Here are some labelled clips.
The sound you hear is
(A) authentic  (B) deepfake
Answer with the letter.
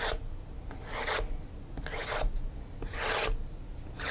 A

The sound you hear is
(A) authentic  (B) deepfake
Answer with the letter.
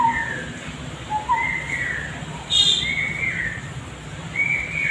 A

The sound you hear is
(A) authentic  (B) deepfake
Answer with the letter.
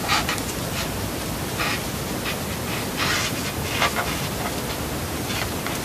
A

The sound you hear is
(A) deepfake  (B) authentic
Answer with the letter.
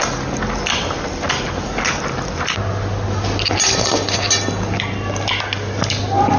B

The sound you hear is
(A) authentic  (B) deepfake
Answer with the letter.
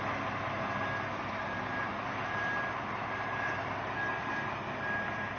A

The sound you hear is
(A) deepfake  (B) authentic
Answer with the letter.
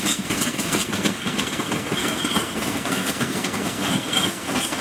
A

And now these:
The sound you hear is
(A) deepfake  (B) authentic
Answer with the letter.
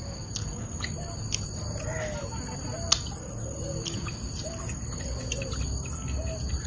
B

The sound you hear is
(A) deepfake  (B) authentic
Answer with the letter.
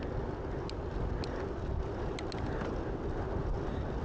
B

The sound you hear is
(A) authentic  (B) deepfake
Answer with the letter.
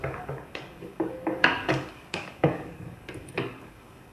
B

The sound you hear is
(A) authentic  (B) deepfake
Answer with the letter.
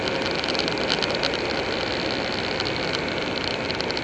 A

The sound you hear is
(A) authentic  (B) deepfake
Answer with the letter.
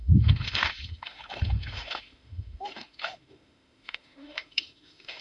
B